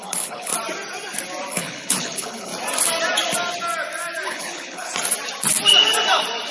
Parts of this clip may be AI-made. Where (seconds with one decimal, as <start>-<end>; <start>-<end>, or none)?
0.0-0.5; 1.5-2.5; 4.3-4.9

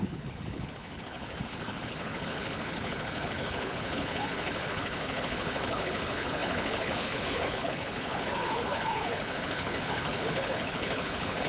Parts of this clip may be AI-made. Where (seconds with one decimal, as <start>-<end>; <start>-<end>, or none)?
0.0-11.5

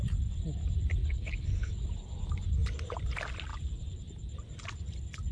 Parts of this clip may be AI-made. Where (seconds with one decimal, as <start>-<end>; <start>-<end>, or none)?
1.0-1.7

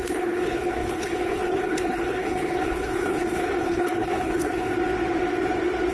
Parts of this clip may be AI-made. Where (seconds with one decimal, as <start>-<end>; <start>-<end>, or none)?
0.0-4.7

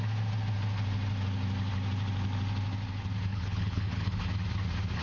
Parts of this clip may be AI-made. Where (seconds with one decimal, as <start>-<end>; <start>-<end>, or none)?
3.3-4.2

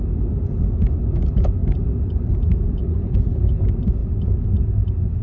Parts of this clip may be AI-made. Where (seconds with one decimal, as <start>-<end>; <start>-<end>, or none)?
2.8-3.6

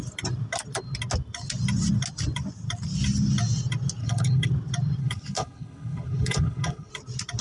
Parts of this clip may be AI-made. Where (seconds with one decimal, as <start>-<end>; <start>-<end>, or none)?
4.0-4.5; 5.0-6.9

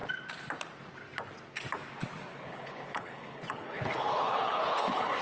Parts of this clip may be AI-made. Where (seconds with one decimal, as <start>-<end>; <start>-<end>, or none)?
2.3-5.2